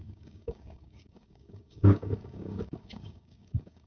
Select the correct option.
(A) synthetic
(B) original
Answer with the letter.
A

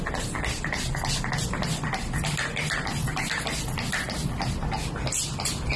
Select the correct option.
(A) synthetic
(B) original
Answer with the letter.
B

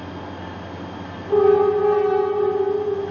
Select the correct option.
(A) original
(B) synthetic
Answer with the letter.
A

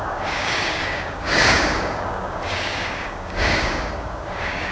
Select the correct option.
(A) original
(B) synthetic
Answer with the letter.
B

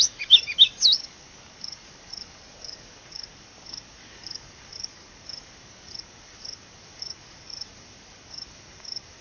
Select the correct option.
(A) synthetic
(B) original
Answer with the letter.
A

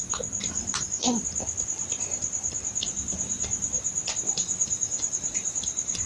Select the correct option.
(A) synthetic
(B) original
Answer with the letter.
B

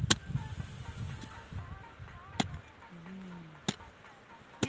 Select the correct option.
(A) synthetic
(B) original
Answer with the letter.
B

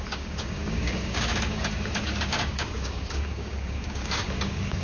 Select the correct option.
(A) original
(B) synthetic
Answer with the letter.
B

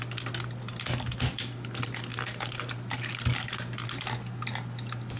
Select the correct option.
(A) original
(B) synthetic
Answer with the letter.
A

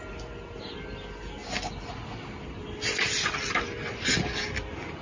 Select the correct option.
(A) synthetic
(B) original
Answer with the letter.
B